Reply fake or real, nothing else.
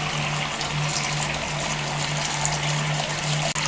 real